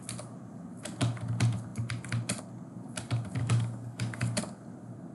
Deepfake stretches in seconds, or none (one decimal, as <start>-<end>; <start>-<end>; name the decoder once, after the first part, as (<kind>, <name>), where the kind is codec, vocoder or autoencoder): 3.4-4.4 (codec, DAC)

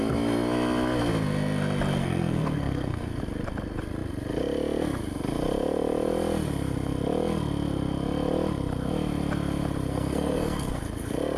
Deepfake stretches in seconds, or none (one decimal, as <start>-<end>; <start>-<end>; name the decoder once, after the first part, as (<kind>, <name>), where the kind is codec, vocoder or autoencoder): 2.0-3.2 (codec, SNAC); 9.9-10.8